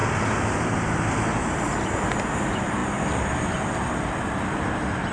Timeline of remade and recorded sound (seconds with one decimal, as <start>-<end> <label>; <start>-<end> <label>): 0.0-5.1 recorded